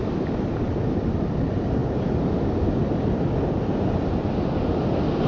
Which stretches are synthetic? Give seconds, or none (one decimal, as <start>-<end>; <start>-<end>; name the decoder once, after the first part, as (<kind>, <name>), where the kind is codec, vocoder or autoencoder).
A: none